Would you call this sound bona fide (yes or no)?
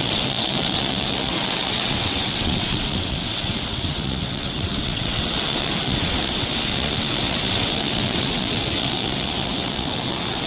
no